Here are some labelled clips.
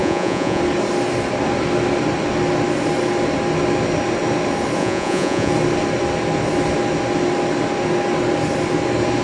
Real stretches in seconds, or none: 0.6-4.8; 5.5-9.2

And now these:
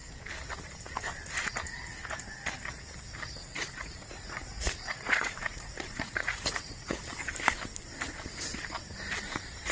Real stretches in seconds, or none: 0.0-3.4; 7.0-9.7

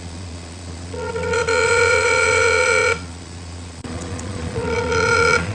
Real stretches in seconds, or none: none

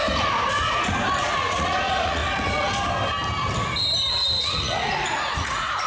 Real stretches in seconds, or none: 0.0-1.2; 2.2-4.4